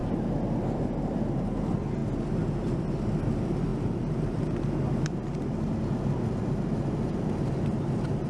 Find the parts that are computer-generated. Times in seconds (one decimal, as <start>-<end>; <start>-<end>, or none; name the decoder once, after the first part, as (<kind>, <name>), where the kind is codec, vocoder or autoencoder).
none